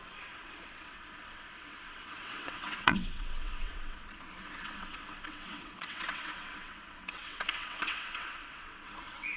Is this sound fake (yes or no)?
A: yes